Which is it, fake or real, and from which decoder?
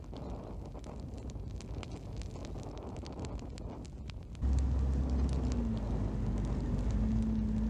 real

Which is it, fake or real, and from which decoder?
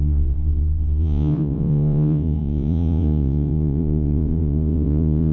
fake, vocoder, Vocos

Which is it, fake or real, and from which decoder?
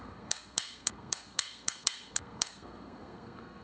fake, codec, SNAC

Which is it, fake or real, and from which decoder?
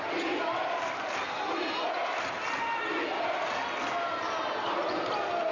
real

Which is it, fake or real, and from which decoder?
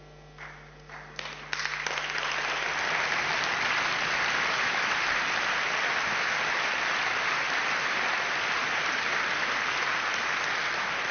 real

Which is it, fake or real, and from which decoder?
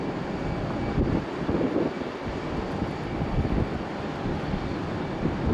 real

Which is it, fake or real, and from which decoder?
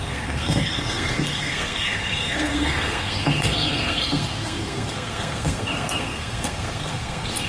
fake, codec, SNAC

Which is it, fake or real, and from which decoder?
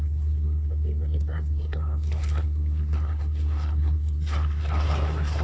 fake, codec, SNAC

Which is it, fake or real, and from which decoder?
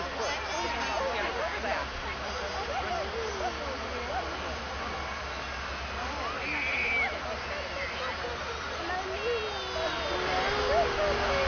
real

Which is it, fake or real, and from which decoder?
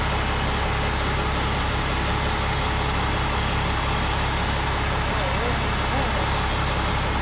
real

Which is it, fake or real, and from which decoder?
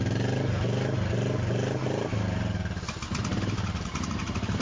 real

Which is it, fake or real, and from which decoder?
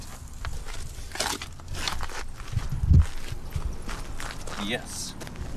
real